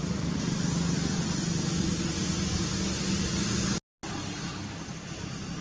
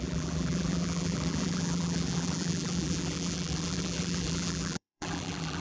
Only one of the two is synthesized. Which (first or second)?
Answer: second